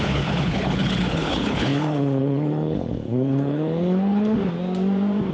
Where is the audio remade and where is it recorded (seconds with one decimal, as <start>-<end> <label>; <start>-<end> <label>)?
0.0-4.4 remade; 4.4-5.3 recorded